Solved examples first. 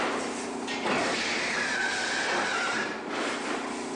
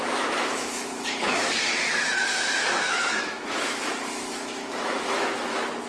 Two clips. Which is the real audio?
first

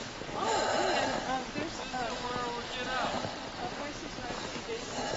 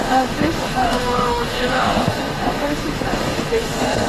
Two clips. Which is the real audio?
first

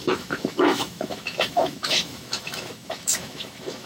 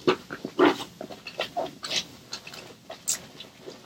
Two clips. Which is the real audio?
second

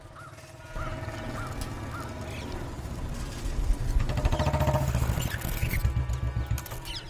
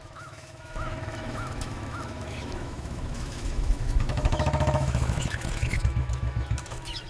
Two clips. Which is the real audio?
first